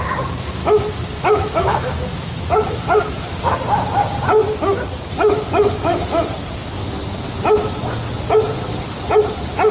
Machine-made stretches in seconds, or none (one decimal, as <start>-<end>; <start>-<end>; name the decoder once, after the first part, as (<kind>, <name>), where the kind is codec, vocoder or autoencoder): 0.6-3.0 (autoencoder, DAC-VAE)